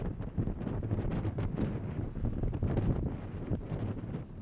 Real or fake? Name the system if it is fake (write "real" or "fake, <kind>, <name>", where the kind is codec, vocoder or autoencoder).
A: fake, vocoder, BigVGAN v2